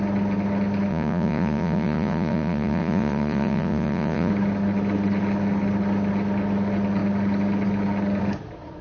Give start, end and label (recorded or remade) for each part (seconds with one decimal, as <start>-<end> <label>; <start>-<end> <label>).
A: 0.0-0.9 recorded; 0.9-4.3 remade; 4.3-8.8 recorded

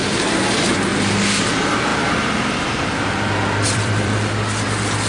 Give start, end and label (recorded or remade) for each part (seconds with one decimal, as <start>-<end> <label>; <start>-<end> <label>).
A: 0.0-1.9 recorded; 1.9-5.1 remade